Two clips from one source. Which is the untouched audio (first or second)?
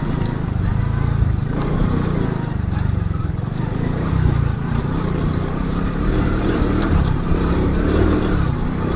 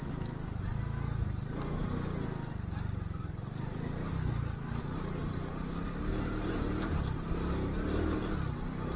second